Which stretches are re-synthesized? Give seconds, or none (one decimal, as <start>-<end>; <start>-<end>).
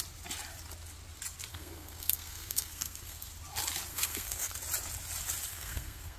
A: 1.5-3.3; 3.9-4.5; 5.5-6.2